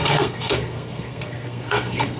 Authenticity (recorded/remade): remade